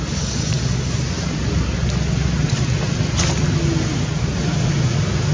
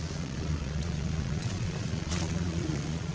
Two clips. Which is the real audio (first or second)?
first